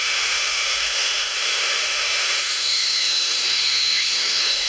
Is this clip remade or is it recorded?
remade